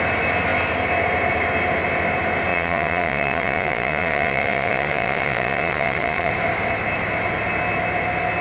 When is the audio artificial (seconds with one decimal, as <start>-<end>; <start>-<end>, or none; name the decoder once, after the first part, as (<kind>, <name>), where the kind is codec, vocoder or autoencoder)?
2.5-6.3 (vocoder, Vocos)